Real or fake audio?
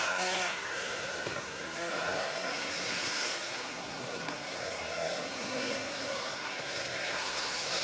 fake